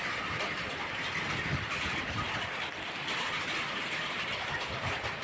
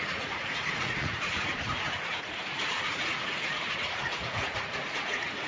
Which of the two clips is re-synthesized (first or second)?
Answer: second